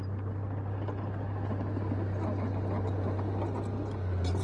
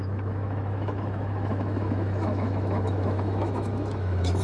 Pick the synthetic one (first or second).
second